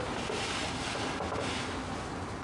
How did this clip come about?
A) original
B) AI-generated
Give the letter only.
A